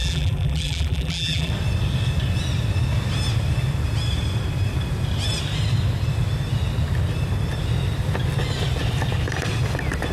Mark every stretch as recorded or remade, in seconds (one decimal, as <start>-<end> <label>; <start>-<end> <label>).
0.0-1.5 remade; 1.5-10.1 recorded